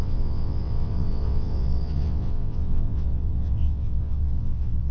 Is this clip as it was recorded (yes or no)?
no